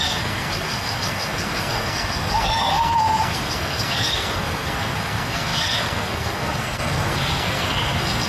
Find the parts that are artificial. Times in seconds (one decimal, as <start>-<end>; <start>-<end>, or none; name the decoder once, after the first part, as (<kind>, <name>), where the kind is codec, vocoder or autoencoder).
0.0-8.3 (codec, SNAC)